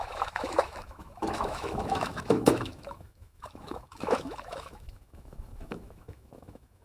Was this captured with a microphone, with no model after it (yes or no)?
no